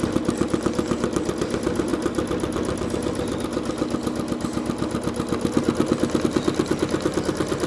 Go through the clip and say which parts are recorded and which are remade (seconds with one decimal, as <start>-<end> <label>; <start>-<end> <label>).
0.0-7.7 recorded